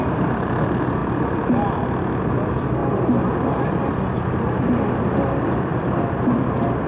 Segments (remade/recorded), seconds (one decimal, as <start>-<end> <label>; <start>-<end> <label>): 0.0-6.9 recorded